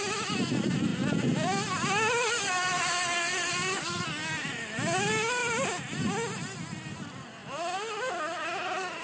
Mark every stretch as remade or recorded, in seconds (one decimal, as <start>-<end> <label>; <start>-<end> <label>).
0.0-9.0 recorded